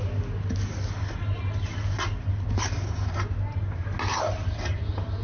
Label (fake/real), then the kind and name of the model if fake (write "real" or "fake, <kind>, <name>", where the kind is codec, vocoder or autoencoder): real